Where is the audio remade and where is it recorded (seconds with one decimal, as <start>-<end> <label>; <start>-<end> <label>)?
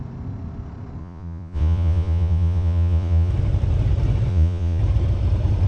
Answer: 0.0-1.0 recorded; 1.0-3.3 remade; 3.3-4.3 recorded; 4.3-4.8 remade; 4.8-5.7 recorded